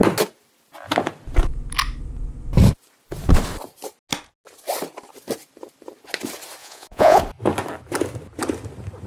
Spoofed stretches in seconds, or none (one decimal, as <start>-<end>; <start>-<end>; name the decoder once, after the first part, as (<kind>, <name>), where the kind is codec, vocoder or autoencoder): 6.6-7.2 (vocoder, Vocos)